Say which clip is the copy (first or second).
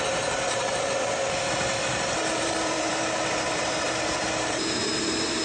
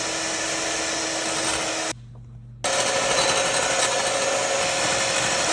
first